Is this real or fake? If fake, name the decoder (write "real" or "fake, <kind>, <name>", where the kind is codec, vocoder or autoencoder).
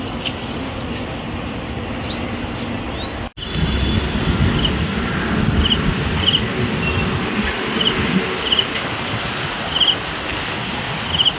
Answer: real